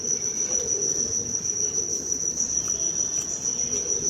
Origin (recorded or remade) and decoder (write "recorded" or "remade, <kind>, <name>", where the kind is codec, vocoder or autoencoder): recorded